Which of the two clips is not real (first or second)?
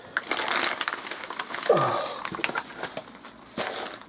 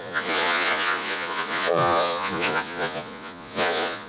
second